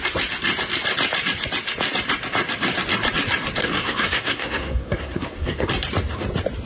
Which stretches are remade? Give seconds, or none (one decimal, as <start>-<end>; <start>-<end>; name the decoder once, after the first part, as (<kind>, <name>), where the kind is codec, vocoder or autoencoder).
3.6-5.7 (codec, SNAC)